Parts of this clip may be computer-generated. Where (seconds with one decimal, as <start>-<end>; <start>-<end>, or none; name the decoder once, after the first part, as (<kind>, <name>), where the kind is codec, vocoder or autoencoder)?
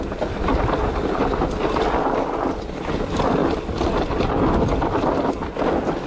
none